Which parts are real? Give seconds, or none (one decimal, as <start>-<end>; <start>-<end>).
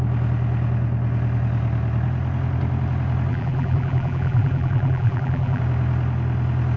0.0-3.3; 5.6-6.8